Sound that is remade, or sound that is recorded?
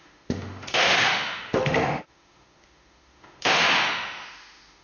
remade